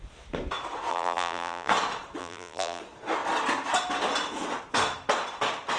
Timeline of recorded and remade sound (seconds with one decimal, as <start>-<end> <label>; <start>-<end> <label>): 0.0-0.9 recorded; 0.9-1.7 remade; 1.7-2.2 recorded; 2.2-2.8 remade; 2.8-5.8 recorded